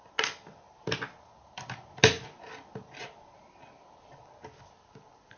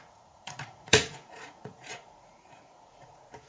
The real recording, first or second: first